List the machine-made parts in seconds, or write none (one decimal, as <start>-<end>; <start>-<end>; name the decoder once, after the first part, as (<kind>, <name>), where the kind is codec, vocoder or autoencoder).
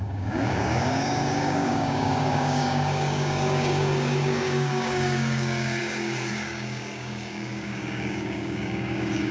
0.0-9.3 (codec, DAC)